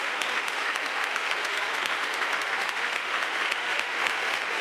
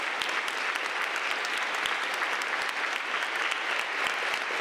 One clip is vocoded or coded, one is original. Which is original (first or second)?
second